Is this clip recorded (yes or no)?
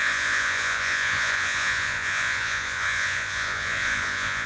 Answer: no